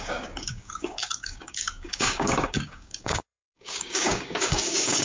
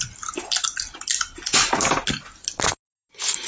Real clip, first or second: second